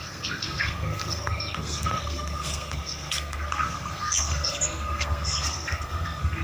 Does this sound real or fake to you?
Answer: fake